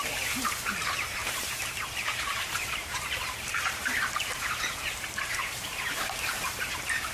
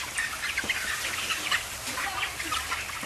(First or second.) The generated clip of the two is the first